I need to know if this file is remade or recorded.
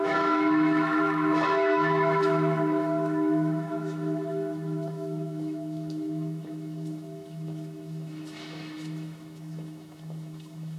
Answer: remade